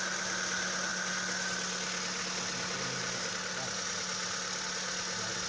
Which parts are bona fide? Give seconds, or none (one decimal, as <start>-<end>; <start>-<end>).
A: 0.0-5.5

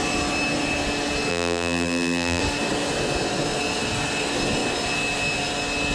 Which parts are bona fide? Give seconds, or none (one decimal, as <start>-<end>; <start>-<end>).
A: 0.0-1.3; 2.4-5.9

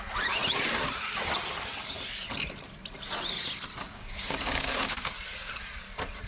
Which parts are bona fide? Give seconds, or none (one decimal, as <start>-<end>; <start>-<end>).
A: 0.0-3.8; 5.1-6.3

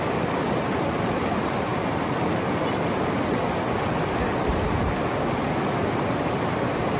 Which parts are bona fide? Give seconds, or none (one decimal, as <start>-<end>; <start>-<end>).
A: 0.0-7.0

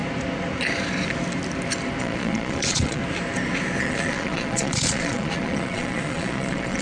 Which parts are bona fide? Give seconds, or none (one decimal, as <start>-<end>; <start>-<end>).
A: 0.0-2.0; 3.0-3.8